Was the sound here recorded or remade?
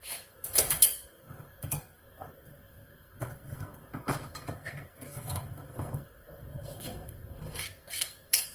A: remade